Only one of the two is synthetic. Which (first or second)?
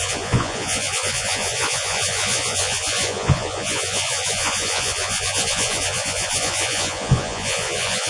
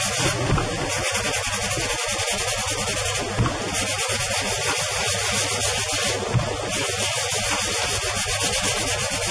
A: first